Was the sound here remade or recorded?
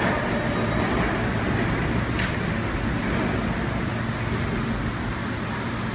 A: recorded